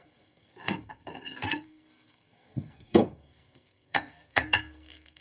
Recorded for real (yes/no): no